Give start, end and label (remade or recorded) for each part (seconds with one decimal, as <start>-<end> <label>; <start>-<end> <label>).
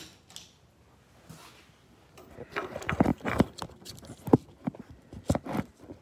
0.0-6.0 recorded